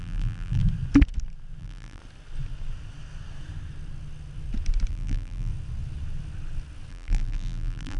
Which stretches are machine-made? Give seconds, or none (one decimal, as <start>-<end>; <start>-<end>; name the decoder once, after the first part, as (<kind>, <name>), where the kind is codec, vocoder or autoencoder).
0.0-0.6 (vocoder, BigVGAN v2); 1.6-2.0; 4.9-5.5; 6.9-8.0

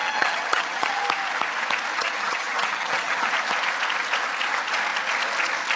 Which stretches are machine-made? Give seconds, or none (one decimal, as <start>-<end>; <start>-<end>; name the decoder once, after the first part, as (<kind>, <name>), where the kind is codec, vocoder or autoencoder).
0.0-1.0 (vocoder, HiFi-GAN); 1.9-3.3

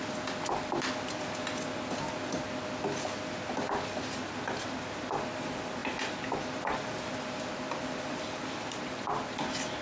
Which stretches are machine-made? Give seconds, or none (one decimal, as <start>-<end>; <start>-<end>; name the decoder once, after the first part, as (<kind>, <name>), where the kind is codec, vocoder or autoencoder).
none

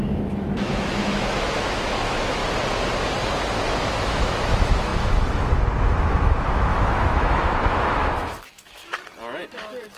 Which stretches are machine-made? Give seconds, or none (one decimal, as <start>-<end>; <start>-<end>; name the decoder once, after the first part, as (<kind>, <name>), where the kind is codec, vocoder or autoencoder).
0.0-2.4 (autoencoder, DAC-VAE); 3.8-8.8